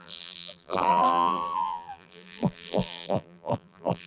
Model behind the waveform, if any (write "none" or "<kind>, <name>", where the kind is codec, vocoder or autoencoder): vocoder, BigVGAN v2